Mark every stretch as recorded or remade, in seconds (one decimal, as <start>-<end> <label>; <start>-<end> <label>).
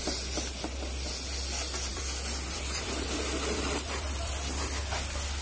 0.0-1.9 recorded; 1.9-4.3 remade; 4.3-5.4 recorded